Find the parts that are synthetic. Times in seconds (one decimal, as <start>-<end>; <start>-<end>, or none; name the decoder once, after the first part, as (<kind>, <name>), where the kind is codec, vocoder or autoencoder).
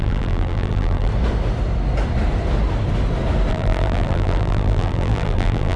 0.0-1.1 (vocoder, BigVGAN v2); 3.5-5.8